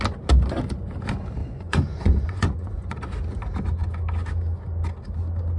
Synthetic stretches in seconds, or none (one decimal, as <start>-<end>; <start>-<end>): 1.4-3.0